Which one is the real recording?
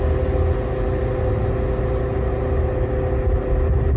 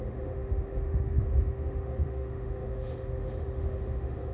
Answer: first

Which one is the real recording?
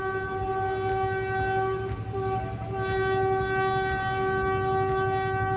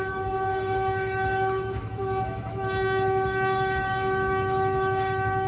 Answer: first